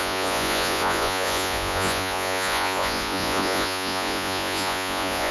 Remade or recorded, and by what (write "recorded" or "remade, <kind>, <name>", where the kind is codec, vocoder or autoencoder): remade, vocoder, Vocos